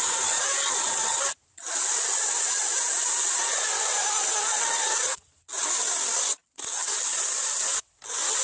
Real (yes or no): yes